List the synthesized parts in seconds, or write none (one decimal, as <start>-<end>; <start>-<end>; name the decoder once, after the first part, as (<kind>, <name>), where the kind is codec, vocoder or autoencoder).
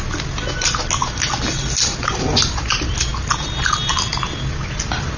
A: none